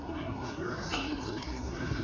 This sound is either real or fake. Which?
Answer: fake